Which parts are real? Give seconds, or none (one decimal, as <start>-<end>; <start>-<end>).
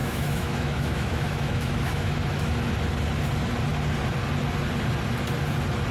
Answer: 2.5-5.9